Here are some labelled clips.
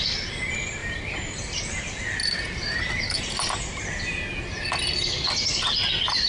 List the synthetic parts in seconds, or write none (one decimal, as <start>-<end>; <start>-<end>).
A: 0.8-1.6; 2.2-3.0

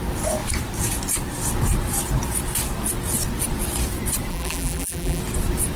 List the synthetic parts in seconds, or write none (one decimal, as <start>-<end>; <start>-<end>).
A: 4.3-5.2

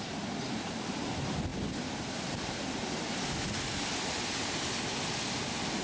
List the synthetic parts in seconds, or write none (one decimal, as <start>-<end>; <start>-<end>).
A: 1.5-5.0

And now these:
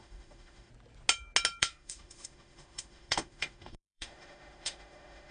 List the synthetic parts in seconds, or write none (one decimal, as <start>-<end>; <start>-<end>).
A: 0.0-0.7; 1.6-5.3